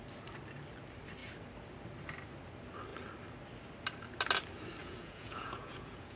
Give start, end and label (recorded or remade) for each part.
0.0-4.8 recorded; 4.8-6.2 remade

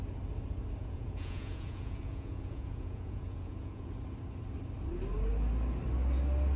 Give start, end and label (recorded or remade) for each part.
0.0-0.8 recorded; 0.8-3.9 remade; 3.9-6.6 recorded

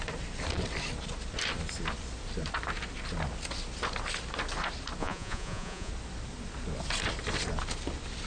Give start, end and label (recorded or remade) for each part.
0.0-5.0 recorded; 5.0-5.9 remade; 5.9-8.3 recorded

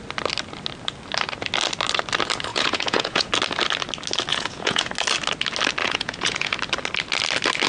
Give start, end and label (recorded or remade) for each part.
0.0-2.5 recorded; 2.5-3.3 remade; 3.3-4.3 recorded; 4.3-4.9 remade; 4.9-5.8 recorded; 5.8-6.5 remade; 6.5-7.7 recorded

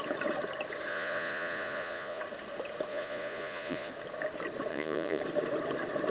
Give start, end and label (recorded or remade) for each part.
0.0-0.9 recorded; 0.9-2.2 remade; 2.2-2.9 recorded; 2.9-3.9 remade; 3.9-4.7 recorded; 4.7-5.2 remade; 5.2-6.1 recorded

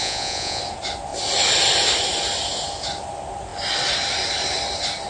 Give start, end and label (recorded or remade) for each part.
0.0-0.6 remade; 0.6-5.1 recorded

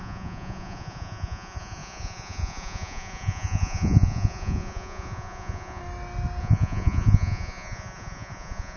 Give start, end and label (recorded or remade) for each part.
0.0-5.8 remade; 5.8-6.4 recorded; 6.4-8.8 remade

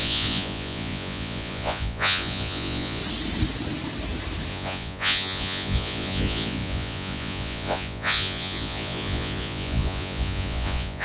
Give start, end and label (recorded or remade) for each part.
0.0-3.0 remade; 3.0-4.5 recorded; 4.5-11.0 remade